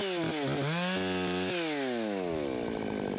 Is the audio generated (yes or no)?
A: no